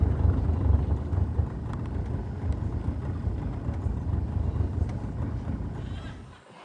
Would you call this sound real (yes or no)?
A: yes